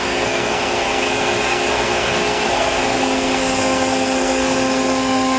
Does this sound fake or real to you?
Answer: fake